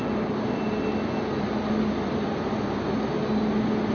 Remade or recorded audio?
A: recorded